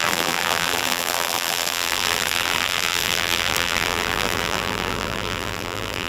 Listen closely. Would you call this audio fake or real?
fake